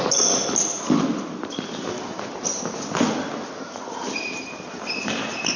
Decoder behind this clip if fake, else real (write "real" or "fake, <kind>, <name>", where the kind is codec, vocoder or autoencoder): real